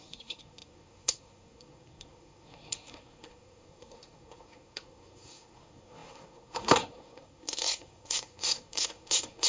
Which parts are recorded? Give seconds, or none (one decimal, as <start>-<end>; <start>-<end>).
none